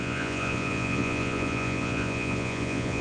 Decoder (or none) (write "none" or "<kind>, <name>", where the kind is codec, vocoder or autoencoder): vocoder, Vocos